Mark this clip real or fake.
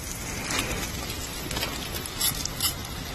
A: real